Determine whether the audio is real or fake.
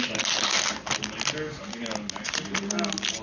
real